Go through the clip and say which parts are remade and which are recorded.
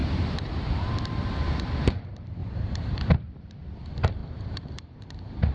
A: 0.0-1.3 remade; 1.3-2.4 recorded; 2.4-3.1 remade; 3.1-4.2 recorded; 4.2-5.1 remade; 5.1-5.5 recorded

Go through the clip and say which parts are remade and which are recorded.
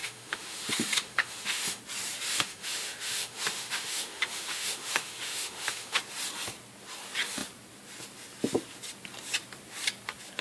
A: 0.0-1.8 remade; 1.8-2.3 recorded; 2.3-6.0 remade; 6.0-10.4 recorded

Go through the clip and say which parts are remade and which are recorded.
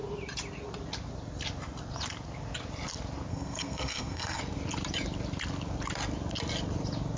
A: 0.0-3.3 recorded; 3.3-4.4 remade; 4.4-7.2 recorded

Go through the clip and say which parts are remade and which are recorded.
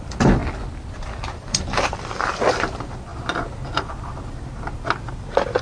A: 0.0-0.4 remade; 0.4-1.2 recorded; 1.2-3.1 remade; 3.1-5.1 recorded; 5.1-5.6 remade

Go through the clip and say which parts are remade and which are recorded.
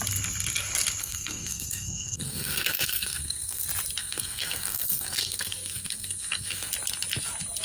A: 0.0-1.0 recorded; 1.0-3.6 remade; 3.6-4.0 recorded; 4.0-6.7 remade; 6.7-7.6 recorded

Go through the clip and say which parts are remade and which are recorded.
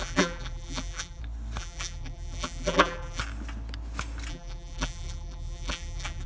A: 0.0-1.2 remade; 1.2-1.6 recorded; 1.6-3.2 remade; 3.2-4.3 recorded; 4.3-6.3 remade